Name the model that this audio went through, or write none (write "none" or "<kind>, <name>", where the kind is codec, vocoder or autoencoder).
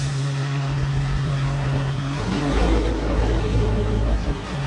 codec, SNAC